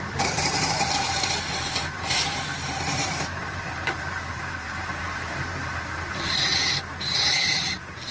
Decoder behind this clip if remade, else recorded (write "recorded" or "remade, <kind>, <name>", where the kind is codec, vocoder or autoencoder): remade, vocoder, BigVGAN v2